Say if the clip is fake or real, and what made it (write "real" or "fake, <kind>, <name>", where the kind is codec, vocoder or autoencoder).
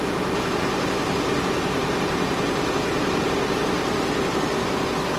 real